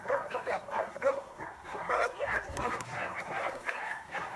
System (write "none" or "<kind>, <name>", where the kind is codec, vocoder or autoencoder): codec, SNAC